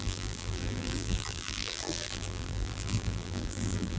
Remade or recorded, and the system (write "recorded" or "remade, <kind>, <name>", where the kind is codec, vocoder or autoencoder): remade, vocoder, BigVGAN v2